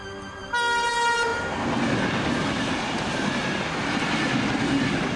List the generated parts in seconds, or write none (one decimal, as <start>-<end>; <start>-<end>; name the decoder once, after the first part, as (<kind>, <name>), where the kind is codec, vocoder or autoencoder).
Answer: none